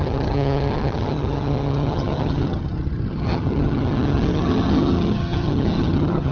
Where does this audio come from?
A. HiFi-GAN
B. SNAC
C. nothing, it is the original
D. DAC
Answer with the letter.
A